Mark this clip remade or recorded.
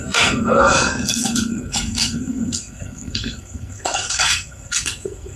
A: remade